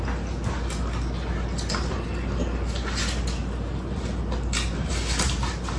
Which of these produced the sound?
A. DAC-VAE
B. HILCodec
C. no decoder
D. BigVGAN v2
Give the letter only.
C